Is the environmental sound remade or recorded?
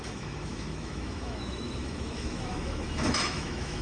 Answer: remade